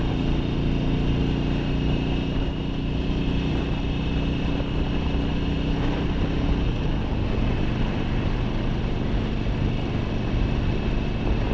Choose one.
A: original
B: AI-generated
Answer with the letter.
A